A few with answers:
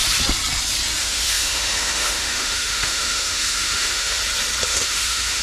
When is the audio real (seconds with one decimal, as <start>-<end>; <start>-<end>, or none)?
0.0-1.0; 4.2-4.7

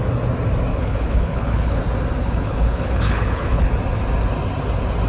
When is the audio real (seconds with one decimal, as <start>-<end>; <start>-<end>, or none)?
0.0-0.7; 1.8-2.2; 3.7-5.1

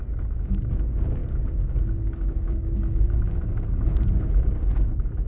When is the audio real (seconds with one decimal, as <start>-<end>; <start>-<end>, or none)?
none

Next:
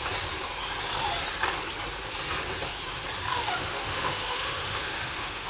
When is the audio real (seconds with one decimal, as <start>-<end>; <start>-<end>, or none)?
0.0-3.3

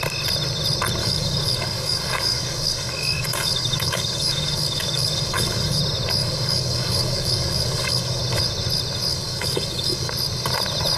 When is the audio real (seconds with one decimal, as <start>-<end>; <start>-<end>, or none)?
0.0-1.0; 5.8-6.2; 8.2-9.1; 10.1-11.0

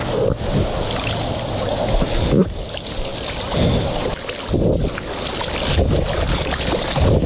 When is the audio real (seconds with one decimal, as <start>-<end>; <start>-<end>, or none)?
0.0-7.3